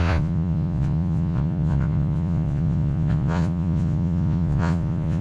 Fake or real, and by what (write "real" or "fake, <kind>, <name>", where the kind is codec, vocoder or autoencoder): fake, vocoder, Vocos